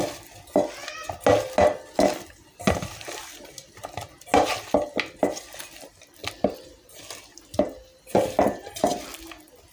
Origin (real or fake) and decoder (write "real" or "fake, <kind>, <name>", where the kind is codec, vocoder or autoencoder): real